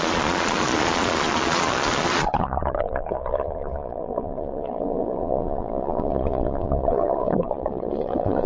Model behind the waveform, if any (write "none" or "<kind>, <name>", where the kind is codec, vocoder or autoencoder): vocoder, Vocos